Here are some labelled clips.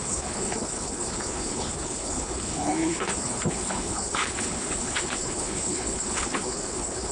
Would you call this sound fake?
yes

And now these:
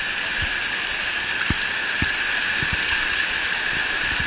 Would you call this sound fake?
no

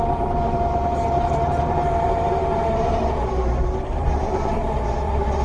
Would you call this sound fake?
yes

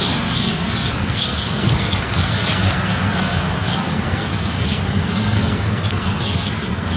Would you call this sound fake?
yes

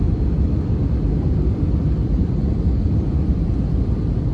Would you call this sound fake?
yes